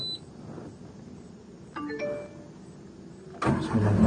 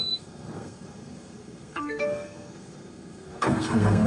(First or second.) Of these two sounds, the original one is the first